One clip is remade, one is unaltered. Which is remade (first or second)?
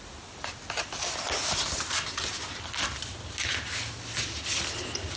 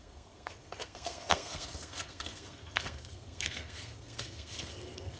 second